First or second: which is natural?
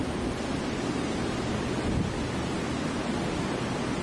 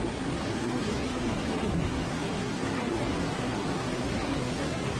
first